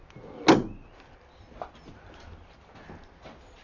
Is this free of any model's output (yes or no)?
yes